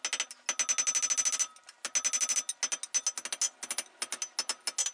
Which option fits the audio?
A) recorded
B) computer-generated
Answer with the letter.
A